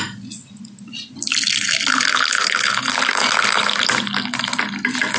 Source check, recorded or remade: recorded